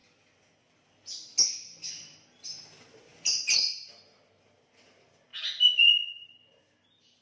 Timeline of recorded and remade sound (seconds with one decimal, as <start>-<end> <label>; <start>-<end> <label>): 0.0-3.1 recorded; 3.1-3.9 remade; 3.9-7.2 recorded